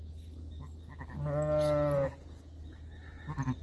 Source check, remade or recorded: recorded